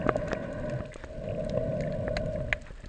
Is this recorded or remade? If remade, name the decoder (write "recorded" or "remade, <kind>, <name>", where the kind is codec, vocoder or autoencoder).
recorded